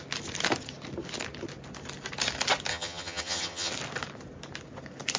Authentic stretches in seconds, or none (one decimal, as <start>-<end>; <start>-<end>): 0.0-2.7; 3.7-5.2